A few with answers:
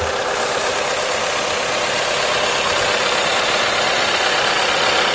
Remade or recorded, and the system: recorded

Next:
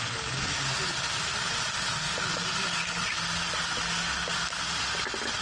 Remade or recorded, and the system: recorded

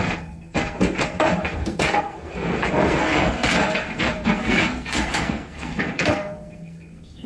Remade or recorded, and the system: remade, codec, SNAC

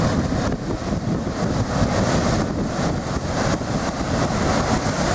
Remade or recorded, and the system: recorded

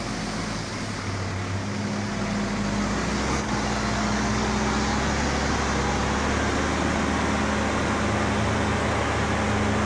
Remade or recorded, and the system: recorded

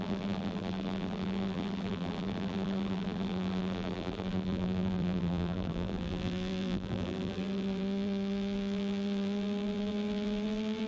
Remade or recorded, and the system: remade, vocoder, BigVGAN v2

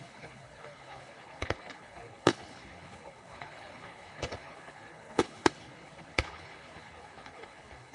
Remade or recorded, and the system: remade, codec, HILCodec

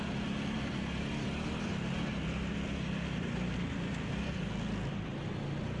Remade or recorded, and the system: recorded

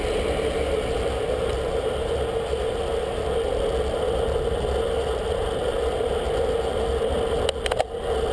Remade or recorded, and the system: recorded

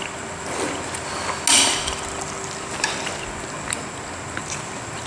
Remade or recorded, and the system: recorded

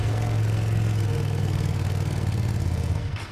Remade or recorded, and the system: remade, codec, SNAC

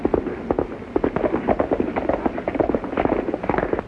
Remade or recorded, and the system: recorded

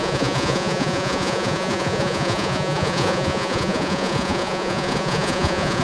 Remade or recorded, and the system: remade, vocoder, Vocos